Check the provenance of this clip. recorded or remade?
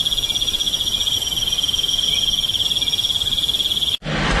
recorded